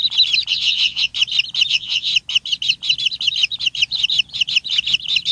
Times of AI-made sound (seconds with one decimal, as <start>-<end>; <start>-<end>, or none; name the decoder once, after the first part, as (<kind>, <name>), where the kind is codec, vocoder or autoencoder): 0.5-1.1 (vocoder, WaveNeXt); 1.7-2.1